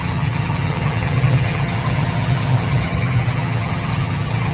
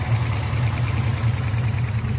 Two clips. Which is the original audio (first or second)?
second